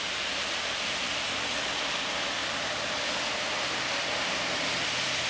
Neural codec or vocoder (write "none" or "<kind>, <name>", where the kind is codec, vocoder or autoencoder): vocoder, BigVGAN v2